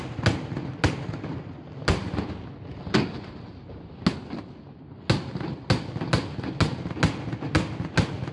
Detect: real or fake real